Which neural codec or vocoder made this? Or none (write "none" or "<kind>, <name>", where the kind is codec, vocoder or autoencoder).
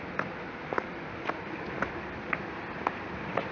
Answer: none